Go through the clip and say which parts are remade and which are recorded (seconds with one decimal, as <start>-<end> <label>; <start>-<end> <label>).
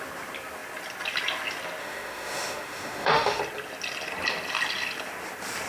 0.0-1.8 recorded; 1.8-3.4 remade; 3.4-5.7 recorded